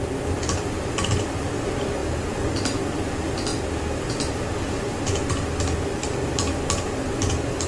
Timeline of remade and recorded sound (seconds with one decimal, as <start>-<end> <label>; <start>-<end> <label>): 0.0-7.7 recorded